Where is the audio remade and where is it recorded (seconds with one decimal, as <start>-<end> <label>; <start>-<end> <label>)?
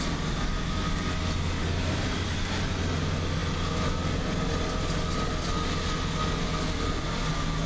0.0-7.7 recorded